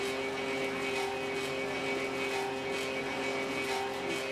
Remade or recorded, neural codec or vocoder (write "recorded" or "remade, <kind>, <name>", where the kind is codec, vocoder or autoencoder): recorded